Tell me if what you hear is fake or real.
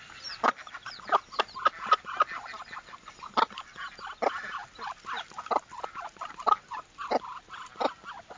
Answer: real